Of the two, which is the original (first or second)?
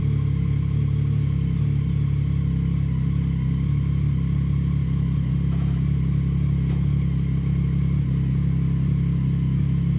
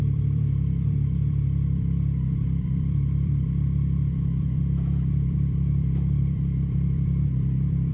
first